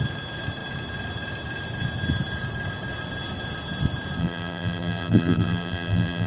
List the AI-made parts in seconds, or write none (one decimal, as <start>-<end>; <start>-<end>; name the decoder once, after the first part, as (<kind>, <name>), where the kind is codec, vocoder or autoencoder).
4.2-6.3 (vocoder, BigVGAN v2)